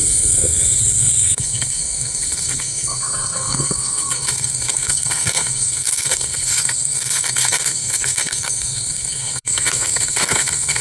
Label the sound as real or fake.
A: fake